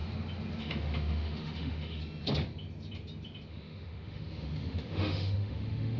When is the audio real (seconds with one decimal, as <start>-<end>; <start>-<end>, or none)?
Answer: 0.0-0.6; 2.0-3.5